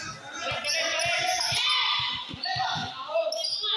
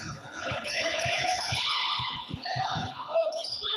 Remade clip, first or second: second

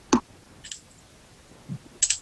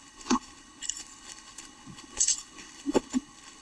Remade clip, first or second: second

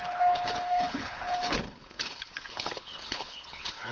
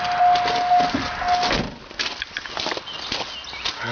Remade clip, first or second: first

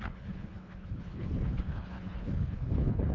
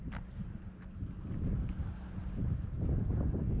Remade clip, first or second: first